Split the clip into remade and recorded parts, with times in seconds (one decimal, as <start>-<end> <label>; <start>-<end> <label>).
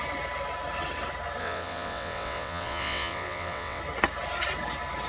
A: 0.0-1.4 recorded; 1.4-3.8 remade; 3.8-5.1 recorded